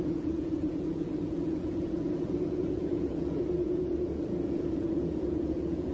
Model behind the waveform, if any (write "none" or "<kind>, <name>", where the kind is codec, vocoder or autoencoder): vocoder, Vocos